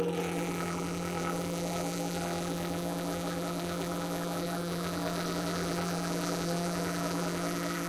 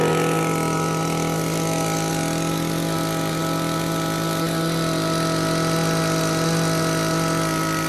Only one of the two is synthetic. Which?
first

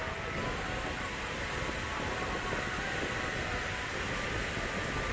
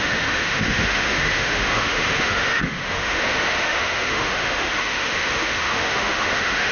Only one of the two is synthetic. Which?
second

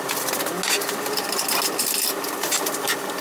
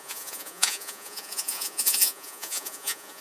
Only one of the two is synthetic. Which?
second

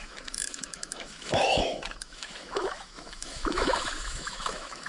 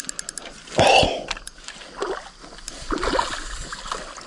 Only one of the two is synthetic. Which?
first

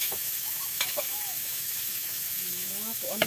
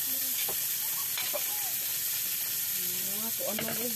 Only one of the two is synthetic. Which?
first